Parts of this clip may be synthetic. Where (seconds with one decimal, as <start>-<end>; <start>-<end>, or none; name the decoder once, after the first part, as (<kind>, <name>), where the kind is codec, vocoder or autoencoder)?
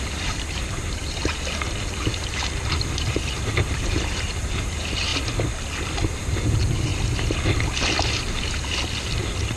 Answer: 0.0-5.1 (vocoder, BigVGAN v2); 6.2-6.9